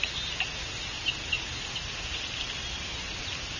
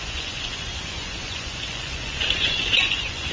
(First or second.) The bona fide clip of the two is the first